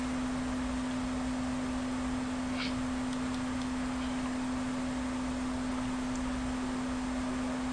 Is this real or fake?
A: real